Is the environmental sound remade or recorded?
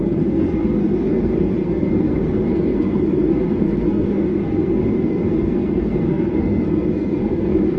remade